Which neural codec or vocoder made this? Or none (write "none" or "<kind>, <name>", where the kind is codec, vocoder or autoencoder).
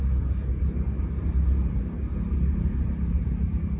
none